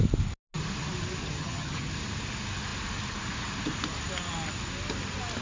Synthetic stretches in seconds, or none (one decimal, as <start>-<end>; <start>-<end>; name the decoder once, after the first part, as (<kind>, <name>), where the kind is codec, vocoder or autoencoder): 1.2-1.9 (vocoder, HiFi-GAN)